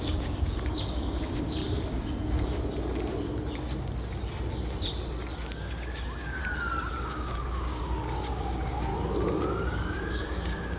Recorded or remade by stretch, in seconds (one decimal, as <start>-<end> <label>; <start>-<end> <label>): 0.0-1.6 remade; 1.6-5.5 recorded; 5.5-6.4 remade; 6.4-6.9 recorded; 6.9-8.9 remade; 8.9-9.5 recorded; 9.5-10.8 remade